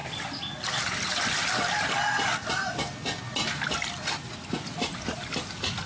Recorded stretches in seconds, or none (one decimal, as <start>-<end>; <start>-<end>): 0.0-5.9